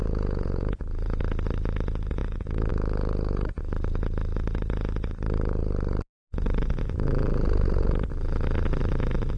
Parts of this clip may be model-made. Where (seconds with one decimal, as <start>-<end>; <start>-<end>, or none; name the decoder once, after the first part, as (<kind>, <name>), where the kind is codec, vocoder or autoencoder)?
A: 0.0-1.2 (vocoder, Vocos); 2.2-2.7

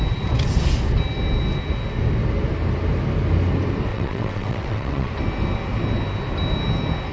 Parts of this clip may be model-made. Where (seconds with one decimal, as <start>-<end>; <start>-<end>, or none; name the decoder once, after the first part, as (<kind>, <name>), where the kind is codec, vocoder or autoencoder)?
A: 3.9-5.1 (vocoder, WaveNeXt)

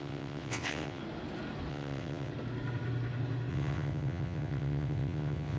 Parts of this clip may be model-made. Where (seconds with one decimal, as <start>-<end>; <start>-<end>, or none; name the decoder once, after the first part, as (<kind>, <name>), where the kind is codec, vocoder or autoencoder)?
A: 0.0-1.0 (vocoder, WaveNeXt); 1.7-2.3; 3.5-5.6